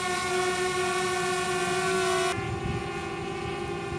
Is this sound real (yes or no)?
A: yes